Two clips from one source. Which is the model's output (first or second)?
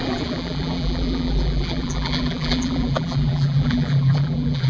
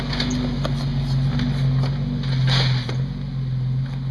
first